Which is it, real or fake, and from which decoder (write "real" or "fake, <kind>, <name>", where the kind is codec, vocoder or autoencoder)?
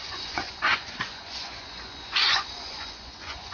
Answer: fake, vocoder, Vocos